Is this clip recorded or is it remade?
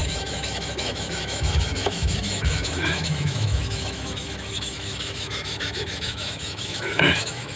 remade